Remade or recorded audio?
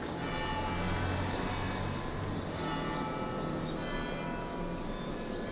recorded